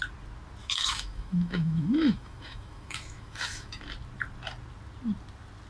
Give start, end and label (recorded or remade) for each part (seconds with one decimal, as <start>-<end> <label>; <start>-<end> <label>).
0.0-0.6 recorded; 0.6-3.8 remade; 3.8-5.7 recorded

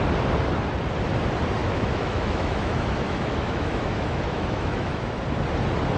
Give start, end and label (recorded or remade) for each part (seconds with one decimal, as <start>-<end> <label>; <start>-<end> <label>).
0.0-1.6 recorded; 1.6-5.2 remade; 5.2-6.0 recorded

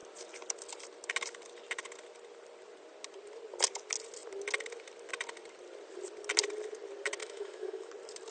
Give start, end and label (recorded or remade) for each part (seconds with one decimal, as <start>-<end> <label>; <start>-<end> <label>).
0.0-7.2 recorded; 7.2-7.9 remade; 7.9-8.3 recorded